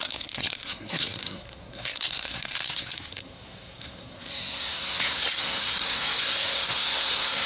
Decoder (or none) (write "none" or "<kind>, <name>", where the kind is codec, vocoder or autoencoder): codec, SNAC